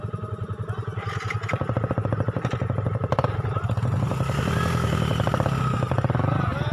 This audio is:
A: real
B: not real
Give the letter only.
A